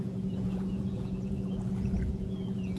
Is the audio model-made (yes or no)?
yes